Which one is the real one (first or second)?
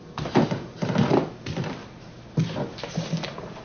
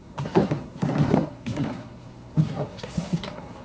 first